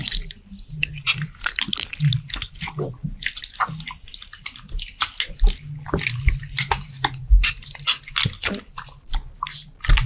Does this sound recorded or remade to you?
recorded